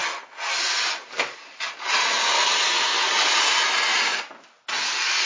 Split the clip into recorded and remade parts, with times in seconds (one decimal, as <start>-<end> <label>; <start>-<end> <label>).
0.0-5.3 recorded

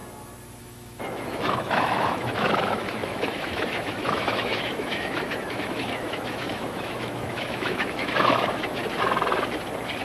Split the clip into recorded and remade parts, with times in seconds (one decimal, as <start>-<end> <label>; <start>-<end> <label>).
0.0-0.6 recorded; 0.6-8.8 remade; 8.8-10.0 recorded

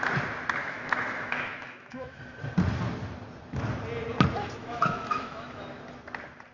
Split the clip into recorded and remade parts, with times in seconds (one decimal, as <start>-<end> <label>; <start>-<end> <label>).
0.0-0.6 recorded; 0.6-2.2 remade; 2.2-4.6 recorded; 4.6-5.8 remade; 5.8-6.5 recorded

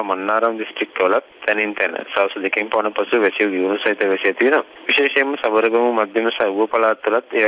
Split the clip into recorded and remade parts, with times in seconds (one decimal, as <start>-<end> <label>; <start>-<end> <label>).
0.0-7.5 recorded